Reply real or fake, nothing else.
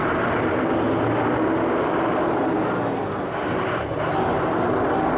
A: real